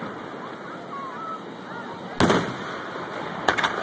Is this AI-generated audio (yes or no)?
no